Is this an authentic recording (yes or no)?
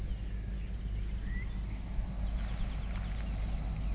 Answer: yes